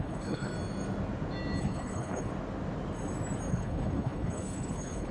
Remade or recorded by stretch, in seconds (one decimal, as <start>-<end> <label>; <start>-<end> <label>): 0.0-0.5 remade; 0.5-1.6 recorded; 1.6-2.3 remade; 2.3-3.5 recorded; 3.5-5.1 remade